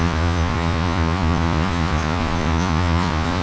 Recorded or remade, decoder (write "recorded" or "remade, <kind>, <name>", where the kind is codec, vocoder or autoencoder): remade, vocoder, Vocos